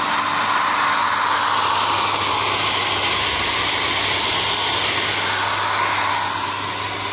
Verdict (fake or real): real